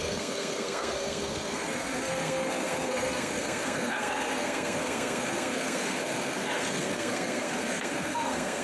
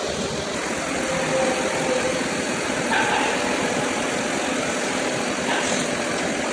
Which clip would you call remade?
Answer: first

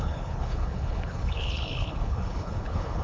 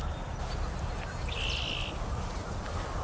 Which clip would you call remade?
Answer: first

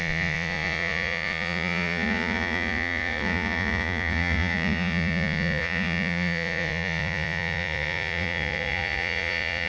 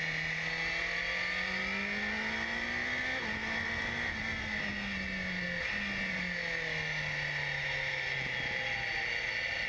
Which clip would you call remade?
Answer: first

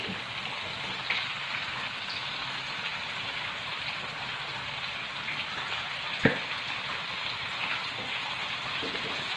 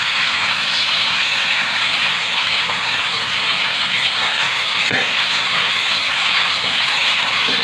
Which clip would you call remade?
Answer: second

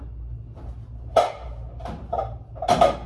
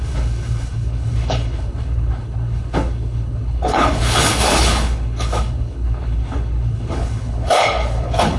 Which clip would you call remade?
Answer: second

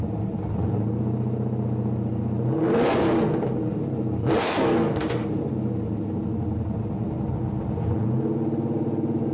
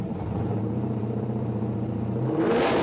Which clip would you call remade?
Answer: second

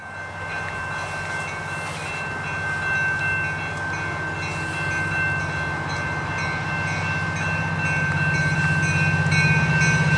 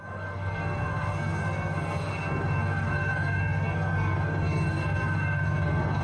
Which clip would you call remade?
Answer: second